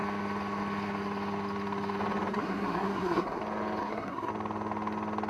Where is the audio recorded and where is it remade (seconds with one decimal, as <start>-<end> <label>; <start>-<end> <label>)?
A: 0.0-2.3 recorded; 2.3-3.4 remade; 3.4-3.8 recorded; 3.8-4.3 remade; 4.3-5.3 recorded

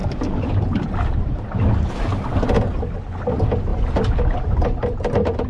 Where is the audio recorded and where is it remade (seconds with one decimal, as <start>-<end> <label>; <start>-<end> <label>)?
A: 0.0-5.5 recorded

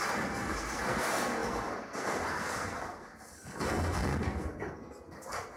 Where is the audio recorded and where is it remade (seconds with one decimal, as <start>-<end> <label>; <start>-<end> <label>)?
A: 0.0-5.6 remade

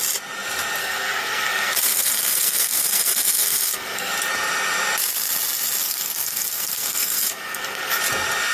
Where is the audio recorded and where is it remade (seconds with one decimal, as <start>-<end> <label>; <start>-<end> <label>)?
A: 0.0-0.8 recorded; 0.8-4.1 remade; 4.1-5.8 recorded; 5.8-8.0 remade; 8.0-8.5 recorded

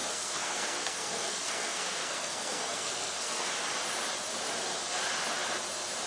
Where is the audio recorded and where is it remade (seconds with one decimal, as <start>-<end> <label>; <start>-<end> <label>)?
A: 0.0-3.5 remade; 3.5-6.1 recorded